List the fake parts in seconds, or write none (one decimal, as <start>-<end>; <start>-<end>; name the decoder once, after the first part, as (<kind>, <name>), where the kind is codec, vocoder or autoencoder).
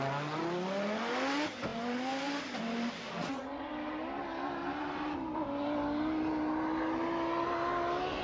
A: 3.2-3.7 (vocoder, Vocos)